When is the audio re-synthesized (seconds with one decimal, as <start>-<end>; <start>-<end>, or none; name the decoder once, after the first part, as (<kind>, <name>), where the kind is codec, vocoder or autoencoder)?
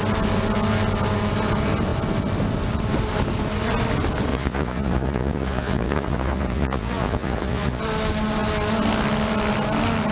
4.3-7.8 (vocoder, Vocos)